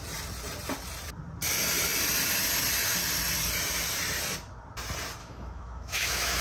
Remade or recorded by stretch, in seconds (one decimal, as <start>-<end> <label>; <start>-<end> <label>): 0.0-5.2 recorded; 5.2-6.4 remade